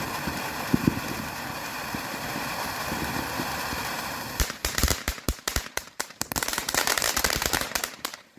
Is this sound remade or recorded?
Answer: remade